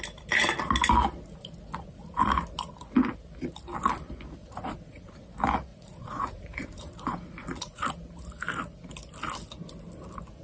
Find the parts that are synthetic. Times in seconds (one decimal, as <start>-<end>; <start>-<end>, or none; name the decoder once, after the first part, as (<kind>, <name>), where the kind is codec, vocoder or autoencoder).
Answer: 4.4-5.1 (vocoder, Vocos); 5.7-7.9